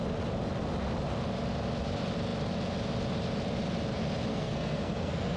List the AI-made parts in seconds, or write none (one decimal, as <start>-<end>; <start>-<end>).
4.3-5.4